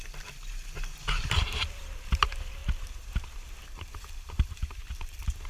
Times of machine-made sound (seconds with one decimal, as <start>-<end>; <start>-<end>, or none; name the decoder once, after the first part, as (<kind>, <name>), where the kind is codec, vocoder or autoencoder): 2.6-5.5 (vocoder, BigVGAN v2)